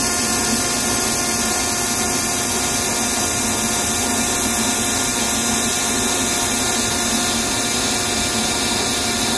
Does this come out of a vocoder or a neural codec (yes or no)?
no